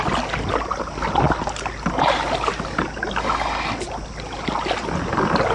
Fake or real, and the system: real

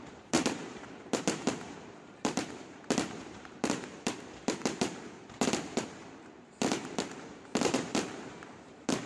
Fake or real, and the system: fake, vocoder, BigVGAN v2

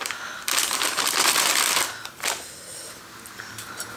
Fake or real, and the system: fake, vocoder, BigVGAN v2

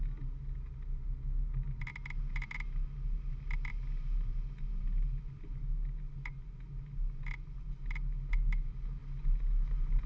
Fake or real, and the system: real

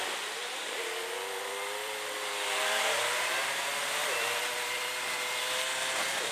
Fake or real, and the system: fake, vocoder, BigVGAN v2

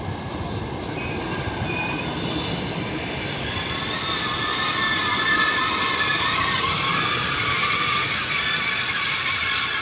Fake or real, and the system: fake, vocoder, BigVGAN v2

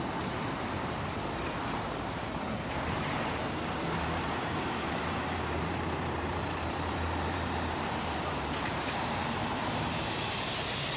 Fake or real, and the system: fake, vocoder, BigVGAN v2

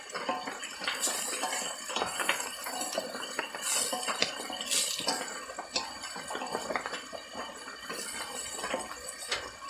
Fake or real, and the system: real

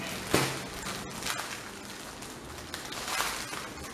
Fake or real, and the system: real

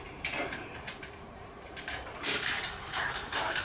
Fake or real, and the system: fake, vocoder, BigVGAN v2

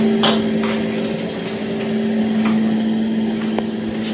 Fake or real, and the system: real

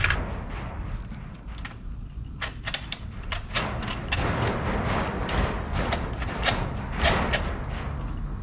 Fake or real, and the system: real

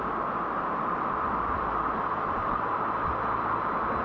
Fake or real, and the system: real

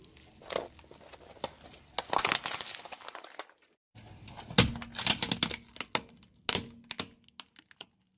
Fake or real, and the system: real